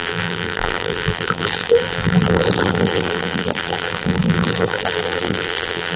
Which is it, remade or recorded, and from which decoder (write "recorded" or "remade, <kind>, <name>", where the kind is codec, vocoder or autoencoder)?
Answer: remade, vocoder, BigVGAN v2